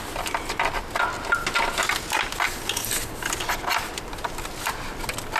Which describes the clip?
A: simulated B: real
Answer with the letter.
B